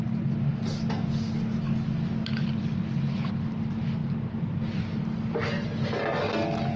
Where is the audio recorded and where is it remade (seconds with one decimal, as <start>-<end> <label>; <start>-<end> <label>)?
0.0-0.5 remade; 0.5-2.6 recorded; 2.6-6.8 remade